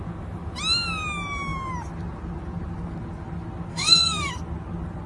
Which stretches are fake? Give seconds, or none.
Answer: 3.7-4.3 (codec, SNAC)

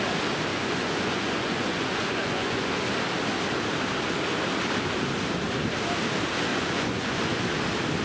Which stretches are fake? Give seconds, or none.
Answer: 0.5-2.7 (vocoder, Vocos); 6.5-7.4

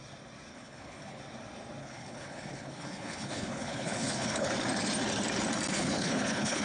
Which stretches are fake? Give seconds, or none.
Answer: 0.5-1.2 (codec, HILCodec); 1.8-4.5; 5.7-6.6

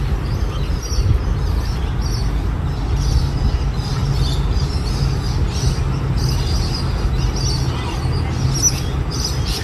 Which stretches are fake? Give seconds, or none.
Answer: none

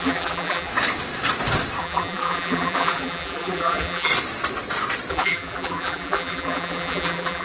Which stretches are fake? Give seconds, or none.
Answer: 0.0-0.7 (vocoder, BigVGAN v2); 1.8-4.1; 5.1-7.4

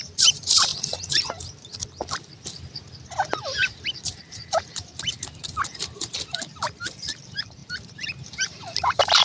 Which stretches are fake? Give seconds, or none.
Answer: 0.0-0.7 (vocoder, BigVGAN v2); 4.1-9.2

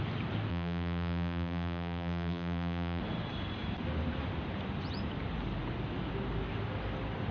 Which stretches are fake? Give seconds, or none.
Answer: 0.5-3.0 (vocoder, BigVGAN v2)

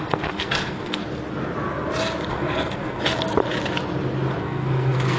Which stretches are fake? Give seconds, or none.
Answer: 0.0-1.0 (codec, SNAC); 2.3-3.0; 4.4-5.2